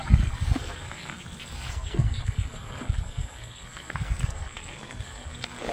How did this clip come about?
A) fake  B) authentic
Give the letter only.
A